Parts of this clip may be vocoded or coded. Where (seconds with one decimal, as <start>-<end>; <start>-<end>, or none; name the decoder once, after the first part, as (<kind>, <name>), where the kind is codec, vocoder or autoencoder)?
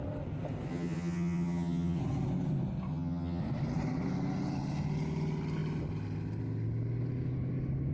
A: 0.7-2.0 (vocoder, HiFi-GAN); 2.9-3.4